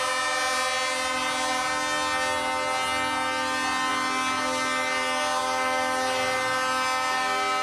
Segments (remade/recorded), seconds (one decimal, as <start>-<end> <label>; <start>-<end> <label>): 0.0-7.6 recorded